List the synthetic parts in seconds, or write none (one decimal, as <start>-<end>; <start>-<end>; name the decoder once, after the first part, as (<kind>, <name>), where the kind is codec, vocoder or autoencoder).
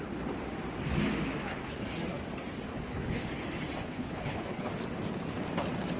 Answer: 2.7-3.3 (codec, HILCodec); 3.8-4.7